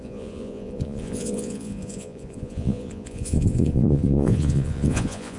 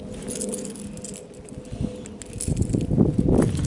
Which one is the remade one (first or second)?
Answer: first